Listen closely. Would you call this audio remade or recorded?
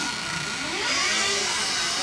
recorded